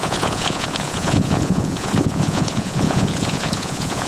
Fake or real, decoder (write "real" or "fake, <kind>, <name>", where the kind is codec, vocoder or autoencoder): fake, vocoder, Vocos